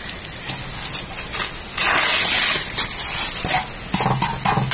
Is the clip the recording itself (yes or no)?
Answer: yes